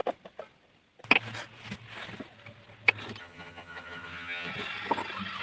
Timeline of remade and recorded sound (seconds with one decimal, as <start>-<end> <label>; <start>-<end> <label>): 0.0-3.2 recorded; 3.2-4.5 remade; 4.5-5.4 recorded